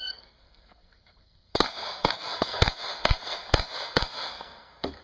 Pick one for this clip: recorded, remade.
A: remade